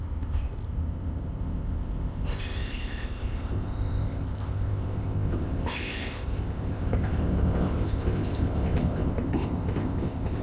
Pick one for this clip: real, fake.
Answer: fake